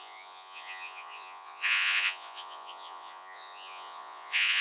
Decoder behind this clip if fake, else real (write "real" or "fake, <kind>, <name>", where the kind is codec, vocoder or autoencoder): fake, vocoder, Vocos